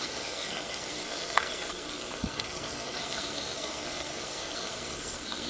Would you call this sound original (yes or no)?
no